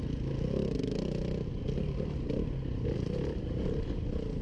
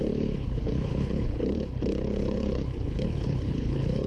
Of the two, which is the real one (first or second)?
first